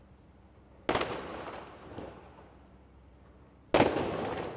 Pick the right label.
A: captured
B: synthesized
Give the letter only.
A